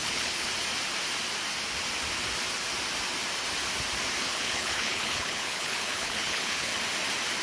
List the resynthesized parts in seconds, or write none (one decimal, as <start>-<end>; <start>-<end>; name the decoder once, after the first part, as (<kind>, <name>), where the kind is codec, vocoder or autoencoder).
0.0-0.5 (codec, HILCodec); 4.2-6.7